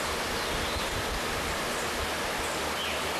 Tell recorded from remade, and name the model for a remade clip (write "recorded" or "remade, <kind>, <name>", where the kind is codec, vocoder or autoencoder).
recorded